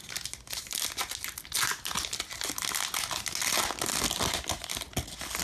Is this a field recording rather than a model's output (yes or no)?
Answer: yes